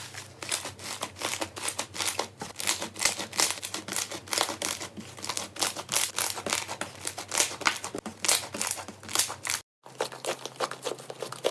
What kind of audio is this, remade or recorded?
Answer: recorded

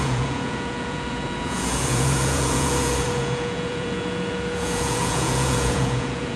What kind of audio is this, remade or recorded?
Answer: remade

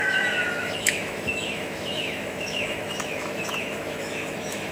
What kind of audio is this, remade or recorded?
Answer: remade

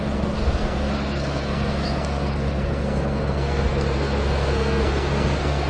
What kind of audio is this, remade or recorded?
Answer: remade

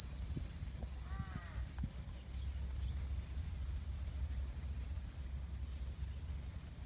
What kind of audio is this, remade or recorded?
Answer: recorded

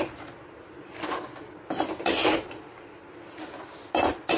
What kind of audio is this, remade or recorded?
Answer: recorded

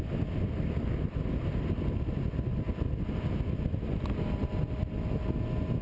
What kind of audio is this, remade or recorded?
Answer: recorded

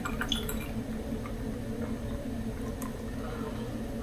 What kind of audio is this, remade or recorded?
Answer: recorded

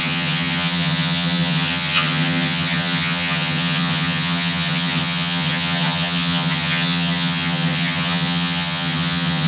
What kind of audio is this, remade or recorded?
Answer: remade